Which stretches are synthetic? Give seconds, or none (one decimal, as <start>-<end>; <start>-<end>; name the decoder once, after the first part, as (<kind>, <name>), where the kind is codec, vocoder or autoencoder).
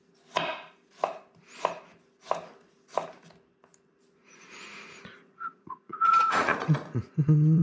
4.2-7.6 (vocoder, Vocos)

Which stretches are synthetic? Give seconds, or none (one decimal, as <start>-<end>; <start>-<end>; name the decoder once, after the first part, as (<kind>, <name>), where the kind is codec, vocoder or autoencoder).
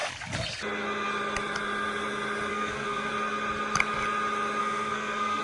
2.5-3.1 (codec, SNAC); 4.6-5.4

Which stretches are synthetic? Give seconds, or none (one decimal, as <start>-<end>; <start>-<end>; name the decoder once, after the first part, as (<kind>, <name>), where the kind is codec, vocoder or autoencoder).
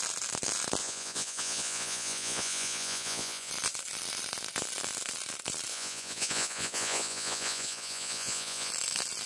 0.8-3.5 (vocoder, Vocos); 5.7-8.7